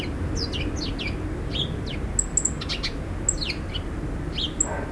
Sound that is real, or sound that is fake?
real